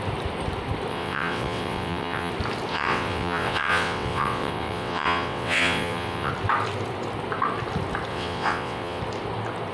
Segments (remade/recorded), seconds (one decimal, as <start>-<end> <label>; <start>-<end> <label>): 0.0-0.9 recorded; 0.9-2.3 remade; 2.3-2.7 recorded; 2.7-6.3 remade; 6.3-8.1 recorded; 8.1-9.0 remade; 9.0-9.7 recorded